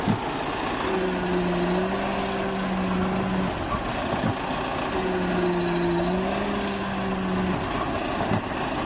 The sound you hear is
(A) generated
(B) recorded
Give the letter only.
B